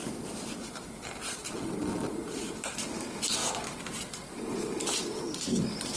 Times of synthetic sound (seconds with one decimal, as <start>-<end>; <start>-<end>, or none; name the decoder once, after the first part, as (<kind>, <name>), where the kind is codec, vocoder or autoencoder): 0.0-3.0 (vocoder, BigVGAN v2); 3.4-4.8